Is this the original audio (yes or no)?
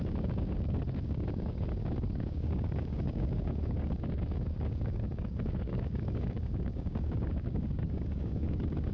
no